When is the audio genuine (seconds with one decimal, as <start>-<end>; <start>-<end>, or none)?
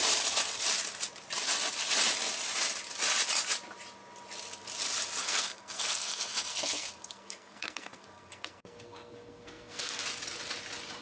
0.0-5.2; 10.0-11.0